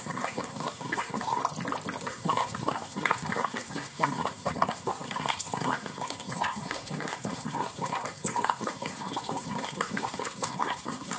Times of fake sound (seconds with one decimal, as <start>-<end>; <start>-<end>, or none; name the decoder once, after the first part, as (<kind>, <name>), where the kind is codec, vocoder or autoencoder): 0.0-1.4 (codec, SNAC); 2.0-11.2